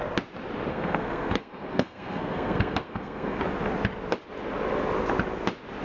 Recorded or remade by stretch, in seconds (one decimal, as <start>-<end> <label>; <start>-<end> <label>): 0.0-0.7 recorded; 0.7-3.4 remade; 3.4-5.8 recorded